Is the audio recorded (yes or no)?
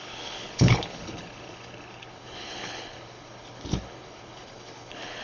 no